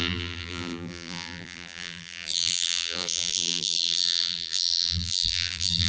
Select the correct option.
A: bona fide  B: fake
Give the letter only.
B